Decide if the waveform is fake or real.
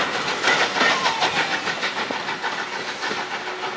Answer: real